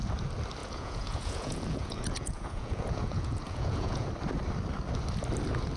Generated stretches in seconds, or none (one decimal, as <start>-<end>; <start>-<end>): 0.6-4.1